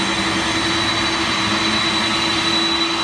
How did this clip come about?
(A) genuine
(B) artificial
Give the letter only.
A